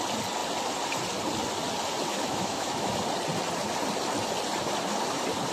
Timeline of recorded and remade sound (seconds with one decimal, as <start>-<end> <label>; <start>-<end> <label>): 0.0-2.1 recorded; 2.1-2.9 remade; 2.9-5.5 recorded